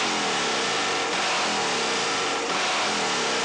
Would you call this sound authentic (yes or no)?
yes